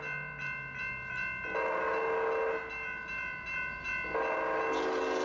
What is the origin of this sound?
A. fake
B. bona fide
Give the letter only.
B